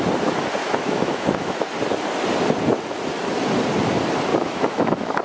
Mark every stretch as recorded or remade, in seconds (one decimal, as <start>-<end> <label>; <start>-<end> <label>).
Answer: 0.0-0.6 recorded; 0.6-1.7 remade; 1.7-4.3 recorded; 4.3-5.2 remade